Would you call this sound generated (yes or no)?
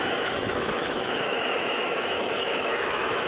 yes